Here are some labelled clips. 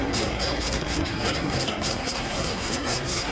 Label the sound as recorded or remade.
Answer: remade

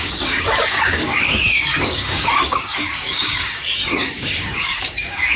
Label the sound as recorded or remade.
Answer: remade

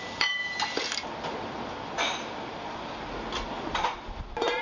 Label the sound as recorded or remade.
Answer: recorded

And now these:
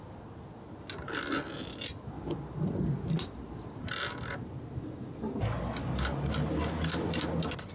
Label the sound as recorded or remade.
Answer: recorded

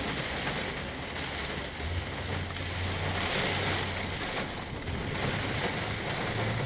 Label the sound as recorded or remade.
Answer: recorded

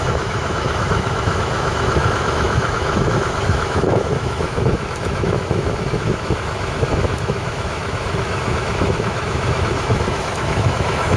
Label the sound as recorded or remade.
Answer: remade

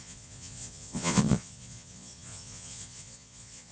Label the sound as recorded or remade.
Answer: remade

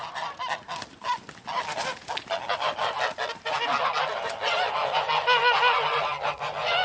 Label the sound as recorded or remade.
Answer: recorded